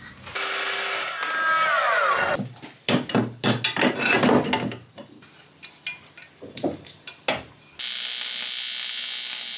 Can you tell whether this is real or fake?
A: real